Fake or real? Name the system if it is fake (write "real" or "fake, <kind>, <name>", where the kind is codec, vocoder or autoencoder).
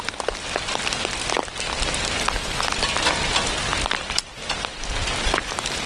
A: real